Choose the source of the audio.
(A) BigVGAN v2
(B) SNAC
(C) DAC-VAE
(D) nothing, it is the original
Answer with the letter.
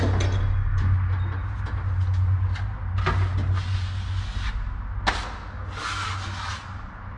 D